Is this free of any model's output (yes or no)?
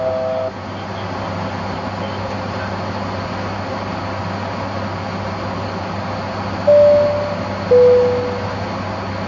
yes